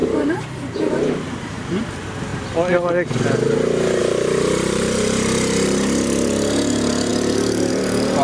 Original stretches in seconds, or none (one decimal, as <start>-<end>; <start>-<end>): 2.3-4.0